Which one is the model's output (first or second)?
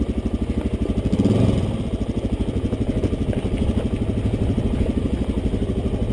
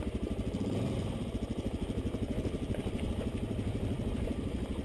second